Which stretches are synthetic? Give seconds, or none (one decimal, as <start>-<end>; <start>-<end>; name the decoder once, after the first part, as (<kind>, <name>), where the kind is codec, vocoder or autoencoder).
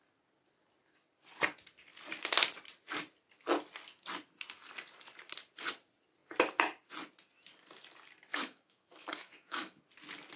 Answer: 8.3-9.8 (autoencoder, DAC-VAE)